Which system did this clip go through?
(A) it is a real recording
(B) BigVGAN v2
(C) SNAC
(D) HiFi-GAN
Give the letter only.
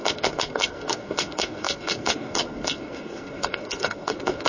C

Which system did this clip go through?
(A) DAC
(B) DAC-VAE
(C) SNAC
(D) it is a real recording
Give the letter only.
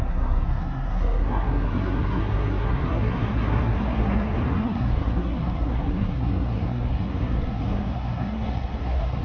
C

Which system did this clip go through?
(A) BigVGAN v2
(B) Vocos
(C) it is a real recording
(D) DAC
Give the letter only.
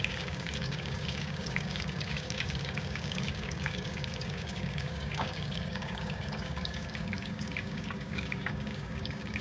D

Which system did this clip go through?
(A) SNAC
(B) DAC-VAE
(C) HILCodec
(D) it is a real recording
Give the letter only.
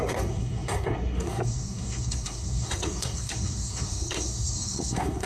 A